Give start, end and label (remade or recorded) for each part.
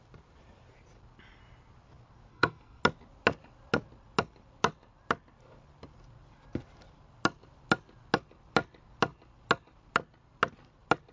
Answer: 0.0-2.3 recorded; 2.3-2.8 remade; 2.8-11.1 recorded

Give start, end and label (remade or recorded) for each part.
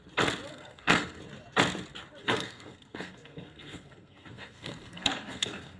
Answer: 0.0-0.5 recorded; 0.5-1.2 remade; 1.2-2.2 recorded; 2.2-5.8 remade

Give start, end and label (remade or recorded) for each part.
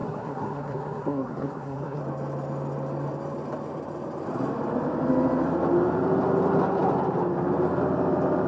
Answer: 0.0-2.0 remade; 2.0-8.5 recorded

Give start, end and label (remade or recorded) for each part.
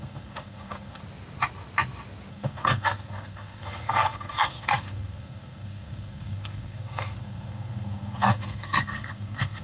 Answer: 0.0-1.0 remade; 1.0-2.3 recorded; 2.3-9.6 remade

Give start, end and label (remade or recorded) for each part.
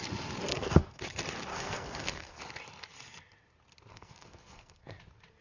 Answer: 0.0-0.5 recorded; 0.5-1.0 remade; 1.0-1.5 recorded; 1.5-2.4 remade; 2.4-3.9 recorded; 3.9-5.0 remade; 5.0-5.4 recorded